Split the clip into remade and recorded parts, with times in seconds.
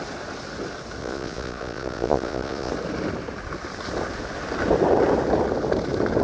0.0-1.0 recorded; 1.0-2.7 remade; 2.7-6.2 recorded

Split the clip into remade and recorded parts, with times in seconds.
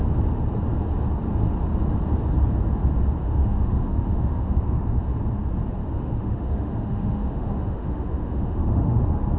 0.0-3.2 recorded; 3.2-5.0 remade; 5.0-5.8 recorded; 5.8-9.0 remade; 9.0-9.4 recorded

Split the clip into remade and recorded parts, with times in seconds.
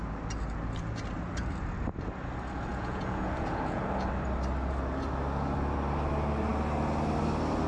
0.0-2.7 recorded; 2.7-3.8 remade; 3.8-7.7 recorded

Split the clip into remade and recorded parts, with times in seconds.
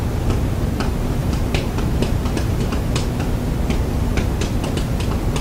0.0-1.2 recorded; 1.2-2.8 remade; 2.8-5.4 recorded